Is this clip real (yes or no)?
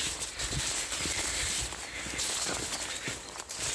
yes